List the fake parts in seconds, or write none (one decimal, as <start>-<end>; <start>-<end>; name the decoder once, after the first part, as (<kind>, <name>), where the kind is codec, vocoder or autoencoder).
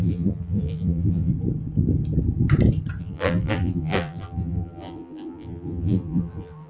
0.0-1.3 (vocoder, BigVGAN v2); 3.0-6.7